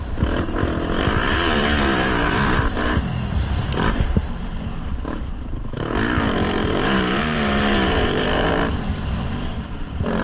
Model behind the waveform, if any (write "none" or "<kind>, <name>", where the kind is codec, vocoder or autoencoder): vocoder, BigVGAN v2